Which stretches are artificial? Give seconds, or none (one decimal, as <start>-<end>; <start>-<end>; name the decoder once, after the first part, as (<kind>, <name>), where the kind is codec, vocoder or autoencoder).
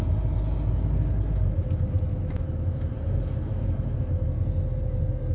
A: 2.1-2.9 (autoencoder, DAC-VAE); 3.5-4.1